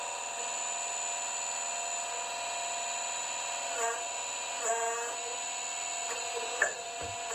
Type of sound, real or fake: real